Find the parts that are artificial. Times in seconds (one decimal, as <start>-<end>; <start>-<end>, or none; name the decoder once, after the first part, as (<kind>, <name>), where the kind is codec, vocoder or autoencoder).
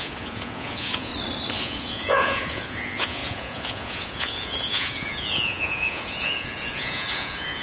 0.0-1.1 (vocoder, Vocos); 1.6-7.6